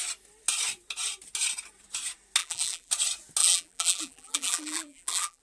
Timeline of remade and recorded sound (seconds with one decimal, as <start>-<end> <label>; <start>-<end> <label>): 0.0-2.4 recorded; 2.4-2.9 remade; 2.9-3.4 recorded; 3.4-5.4 remade